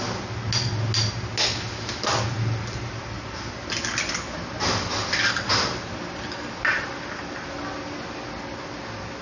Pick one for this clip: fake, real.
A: real